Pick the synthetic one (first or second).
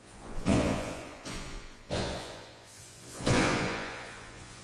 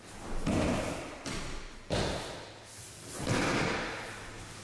first